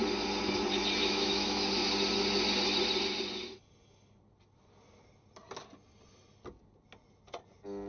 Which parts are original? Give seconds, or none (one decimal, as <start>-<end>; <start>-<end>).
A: 0.0-1.0; 1.7-7.9